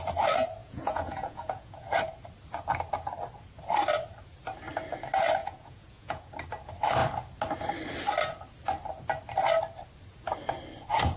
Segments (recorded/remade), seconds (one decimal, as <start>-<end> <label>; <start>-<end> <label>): 0.0-0.6 recorded; 0.6-1.9 remade; 1.9-5.4 recorded; 5.4-6.3 remade; 6.3-11.2 recorded